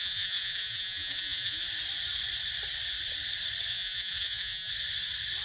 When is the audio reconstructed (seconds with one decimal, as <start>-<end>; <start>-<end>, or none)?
0.0-1.6; 3.7-4.7